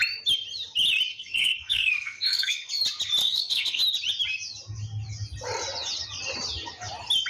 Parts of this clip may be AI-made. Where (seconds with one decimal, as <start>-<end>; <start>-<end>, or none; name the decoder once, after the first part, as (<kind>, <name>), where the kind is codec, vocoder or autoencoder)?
1.1-2.7 (codec, SNAC); 3.2-3.8

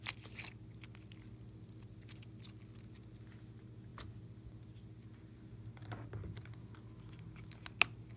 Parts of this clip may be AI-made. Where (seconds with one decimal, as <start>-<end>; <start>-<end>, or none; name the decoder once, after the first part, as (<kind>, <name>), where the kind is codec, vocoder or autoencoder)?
none

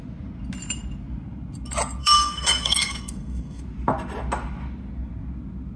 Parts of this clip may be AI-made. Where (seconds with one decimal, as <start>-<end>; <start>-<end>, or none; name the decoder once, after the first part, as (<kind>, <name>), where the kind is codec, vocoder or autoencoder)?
2.0-3.6 (codec, SNAC)

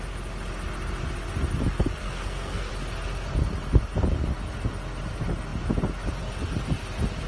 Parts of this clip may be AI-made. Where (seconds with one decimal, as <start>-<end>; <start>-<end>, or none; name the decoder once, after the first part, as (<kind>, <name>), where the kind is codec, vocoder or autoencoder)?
2.0-2.7 (codec, SNAC)

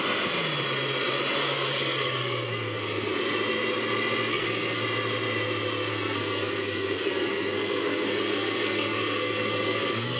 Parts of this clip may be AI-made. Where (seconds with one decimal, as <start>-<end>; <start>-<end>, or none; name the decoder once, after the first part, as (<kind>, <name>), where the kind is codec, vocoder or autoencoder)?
1.4-3.1 (codec, SNAC); 4.3-4.8; 5.9-10.2